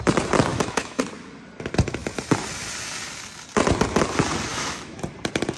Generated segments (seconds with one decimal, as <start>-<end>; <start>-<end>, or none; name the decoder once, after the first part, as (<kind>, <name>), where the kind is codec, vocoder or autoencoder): 0.5-1.0 (autoencoder, DAC-VAE); 4.5-5.0